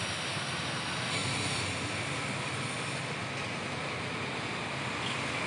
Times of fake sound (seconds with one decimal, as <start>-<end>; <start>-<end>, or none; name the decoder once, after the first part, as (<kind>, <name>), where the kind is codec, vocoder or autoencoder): 1.2-4.5 (vocoder, BigVGAN v2)